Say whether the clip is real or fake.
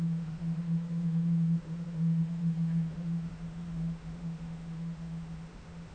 fake